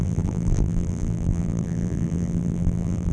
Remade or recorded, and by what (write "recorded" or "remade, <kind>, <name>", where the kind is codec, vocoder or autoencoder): remade, vocoder, BigVGAN v2